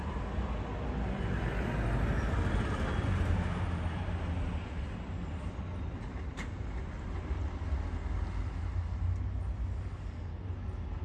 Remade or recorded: recorded